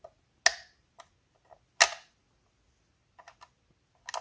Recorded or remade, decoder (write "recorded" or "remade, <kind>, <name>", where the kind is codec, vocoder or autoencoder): recorded